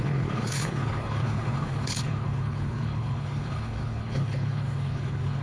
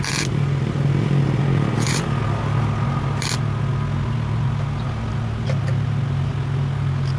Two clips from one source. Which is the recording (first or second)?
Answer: second